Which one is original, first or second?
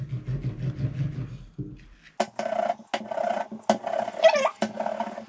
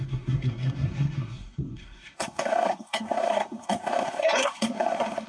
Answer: first